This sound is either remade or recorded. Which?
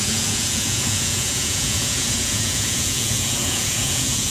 remade